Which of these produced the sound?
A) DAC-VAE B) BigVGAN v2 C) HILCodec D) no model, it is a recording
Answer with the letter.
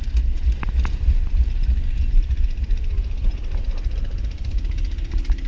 D